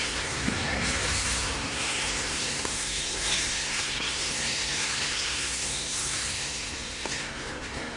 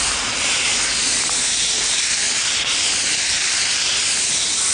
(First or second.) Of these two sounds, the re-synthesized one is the first